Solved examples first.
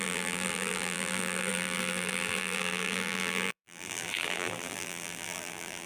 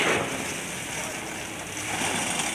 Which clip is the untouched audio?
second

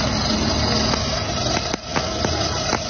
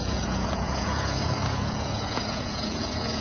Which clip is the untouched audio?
first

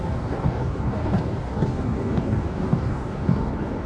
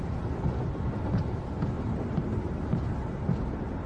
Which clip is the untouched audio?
second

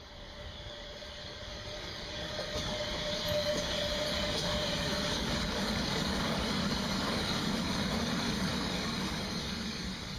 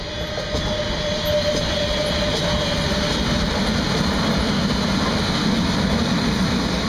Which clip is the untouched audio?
second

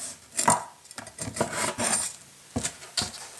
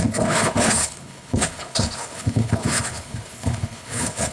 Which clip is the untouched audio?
first